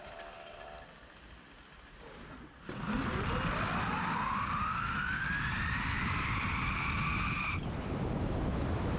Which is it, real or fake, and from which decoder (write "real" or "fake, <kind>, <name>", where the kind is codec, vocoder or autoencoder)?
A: real